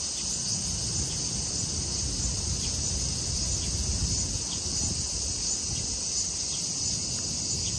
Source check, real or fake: real